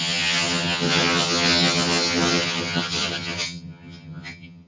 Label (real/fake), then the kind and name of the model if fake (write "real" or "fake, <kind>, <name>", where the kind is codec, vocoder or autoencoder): fake, vocoder, HiFi-GAN